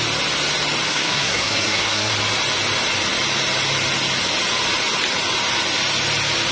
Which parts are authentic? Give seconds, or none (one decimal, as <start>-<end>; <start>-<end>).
0.0-0.9; 2.1-6.5

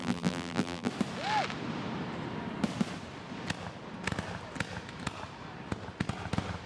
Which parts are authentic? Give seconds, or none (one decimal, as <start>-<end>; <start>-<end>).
0.9-6.7